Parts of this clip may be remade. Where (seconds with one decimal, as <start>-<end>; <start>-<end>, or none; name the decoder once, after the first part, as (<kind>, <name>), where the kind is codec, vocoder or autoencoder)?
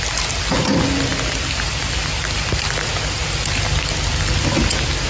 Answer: none